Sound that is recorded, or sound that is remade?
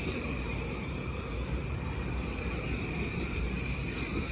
remade